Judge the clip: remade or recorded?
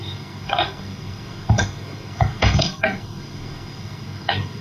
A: remade